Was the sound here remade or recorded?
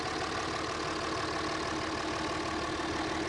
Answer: recorded